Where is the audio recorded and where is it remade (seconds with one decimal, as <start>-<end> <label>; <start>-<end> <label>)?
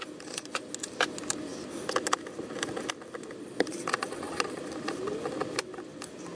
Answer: 0.0-3.4 recorded; 3.4-4.6 remade; 4.6-6.4 recorded